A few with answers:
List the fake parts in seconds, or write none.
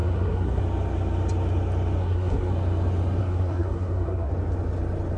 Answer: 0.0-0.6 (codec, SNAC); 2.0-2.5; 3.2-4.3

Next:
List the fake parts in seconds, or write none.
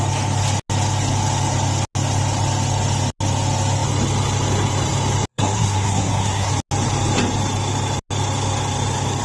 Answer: 5.3-6.5 (codec, SNAC)